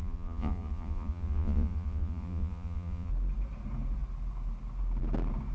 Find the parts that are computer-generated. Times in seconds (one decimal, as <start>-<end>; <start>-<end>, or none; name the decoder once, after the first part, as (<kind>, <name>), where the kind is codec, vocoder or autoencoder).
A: 0.0-3.1 (vocoder, Vocos)

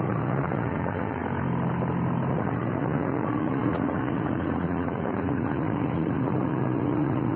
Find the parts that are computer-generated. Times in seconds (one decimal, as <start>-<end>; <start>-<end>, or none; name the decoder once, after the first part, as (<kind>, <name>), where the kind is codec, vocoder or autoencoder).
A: 0.0-1.2 (vocoder, Vocos); 2.3-7.4

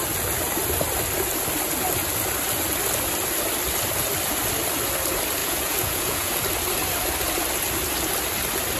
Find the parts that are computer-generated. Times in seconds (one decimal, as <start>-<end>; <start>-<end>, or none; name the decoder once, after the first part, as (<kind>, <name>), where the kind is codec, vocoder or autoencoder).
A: 5.4-6.3 (vocoder, Vocos)

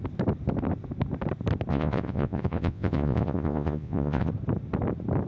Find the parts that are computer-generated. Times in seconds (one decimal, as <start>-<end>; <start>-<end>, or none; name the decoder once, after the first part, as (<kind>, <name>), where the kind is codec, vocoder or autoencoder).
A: 1.7-4.3 (vocoder, Vocos)

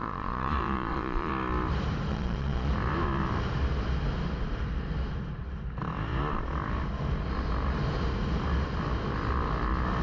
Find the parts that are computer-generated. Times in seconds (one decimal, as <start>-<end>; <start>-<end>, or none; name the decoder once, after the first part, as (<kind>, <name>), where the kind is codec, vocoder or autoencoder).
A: 0.0-1.3 (vocoder, Vocos); 2.1-2.7

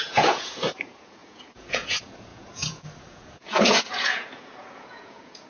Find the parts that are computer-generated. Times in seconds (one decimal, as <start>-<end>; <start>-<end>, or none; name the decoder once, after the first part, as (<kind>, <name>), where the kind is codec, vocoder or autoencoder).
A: 0.0-5.5 (vocoder, Vocos)